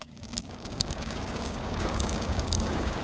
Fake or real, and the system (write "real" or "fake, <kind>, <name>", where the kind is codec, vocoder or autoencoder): fake, codec, DAC